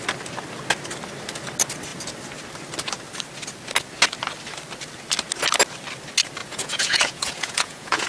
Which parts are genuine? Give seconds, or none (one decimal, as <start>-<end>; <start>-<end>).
0.0-6.4